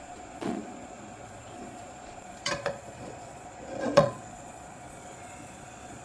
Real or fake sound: fake